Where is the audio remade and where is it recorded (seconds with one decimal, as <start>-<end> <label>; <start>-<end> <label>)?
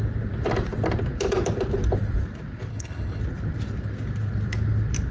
0.0-2.7 recorded; 2.7-3.2 remade; 3.2-5.1 recorded